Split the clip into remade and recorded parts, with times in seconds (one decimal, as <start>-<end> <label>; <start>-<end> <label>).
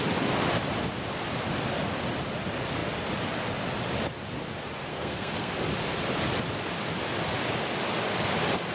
0.0-4.9 recorded; 4.9-5.5 remade; 5.5-8.7 recorded